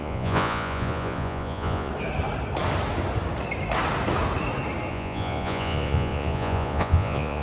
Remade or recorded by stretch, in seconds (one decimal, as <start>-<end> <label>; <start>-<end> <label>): 0.0-1.9 remade; 1.9-4.9 recorded; 4.9-7.4 remade